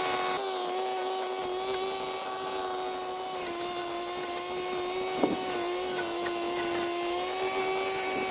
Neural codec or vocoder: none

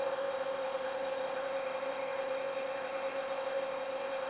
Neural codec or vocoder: codec, ZipCodec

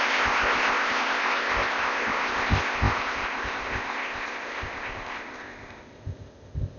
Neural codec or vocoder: codec, ZipCodec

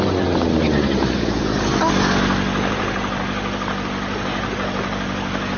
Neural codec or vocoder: none